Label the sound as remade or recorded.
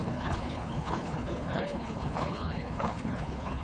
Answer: remade